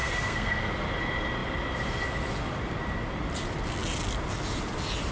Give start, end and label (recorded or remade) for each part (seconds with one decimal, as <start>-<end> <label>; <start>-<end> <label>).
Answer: 0.0-0.7 remade; 0.7-5.1 recorded

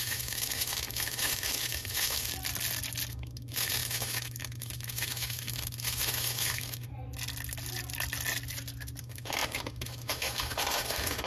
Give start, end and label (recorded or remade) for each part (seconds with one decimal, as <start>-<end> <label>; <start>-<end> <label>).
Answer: 0.0-2.3 remade; 2.3-3.1 recorded; 3.1-6.9 remade; 6.9-9.0 recorded; 9.0-11.3 remade

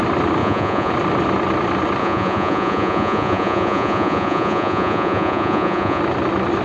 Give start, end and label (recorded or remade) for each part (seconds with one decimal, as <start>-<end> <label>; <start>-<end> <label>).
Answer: 0.0-0.4 recorded; 0.4-0.9 remade; 0.9-2.0 recorded; 2.0-6.0 remade; 6.0-6.6 recorded

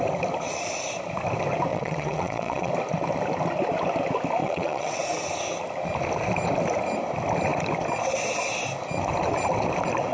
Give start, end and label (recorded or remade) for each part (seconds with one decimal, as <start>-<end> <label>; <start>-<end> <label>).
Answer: 0.0-1.7 recorded; 1.7-2.7 remade; 2.7-4.4 recorded; 4.4-5.0 remade; 5.0-10.1 recorded

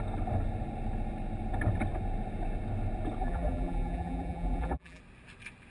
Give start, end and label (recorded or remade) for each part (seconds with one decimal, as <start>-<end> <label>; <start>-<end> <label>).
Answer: 0.0-3.2 recorded; 3.2-5.0 remade; 5.0-5.7 recorded

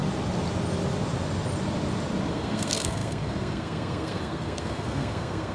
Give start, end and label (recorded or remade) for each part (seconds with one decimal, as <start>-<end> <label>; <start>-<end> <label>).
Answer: 0.0-2.3 recorded; 2.3-5.5 remade

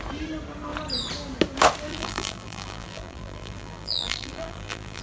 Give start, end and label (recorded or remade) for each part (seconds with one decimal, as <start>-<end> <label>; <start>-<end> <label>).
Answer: 0.0-1.9 recorded; 1.9-5.0 remade